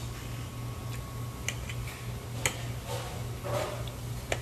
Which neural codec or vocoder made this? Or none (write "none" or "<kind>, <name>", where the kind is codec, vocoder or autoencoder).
none